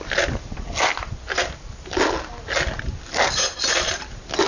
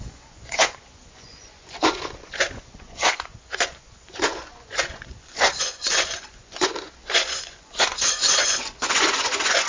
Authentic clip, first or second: first